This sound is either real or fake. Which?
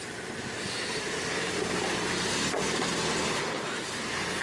fake